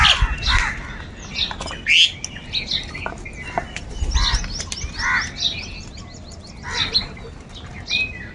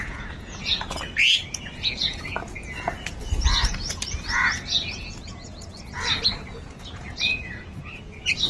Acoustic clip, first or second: first